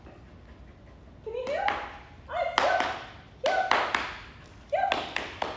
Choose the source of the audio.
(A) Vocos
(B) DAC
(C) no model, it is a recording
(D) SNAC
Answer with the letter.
C